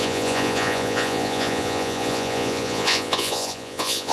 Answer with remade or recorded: remade